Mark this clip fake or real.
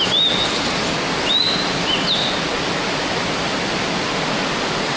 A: real